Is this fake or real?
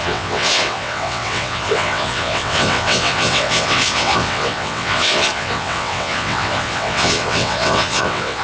fake